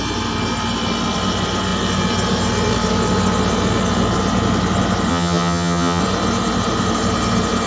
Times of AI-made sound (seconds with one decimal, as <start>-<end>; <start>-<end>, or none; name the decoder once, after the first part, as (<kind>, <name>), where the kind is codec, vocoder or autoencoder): 5.1-6.0 (vocoder, HiFi-GAN)